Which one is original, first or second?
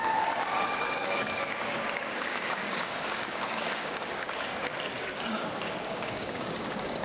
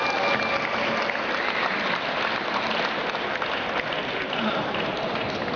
second